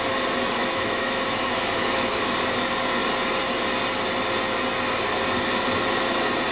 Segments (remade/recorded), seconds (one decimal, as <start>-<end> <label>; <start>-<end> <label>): 0.0-0.6 recorded; 0.6-2.2 remade; 2.2-6.5 recorded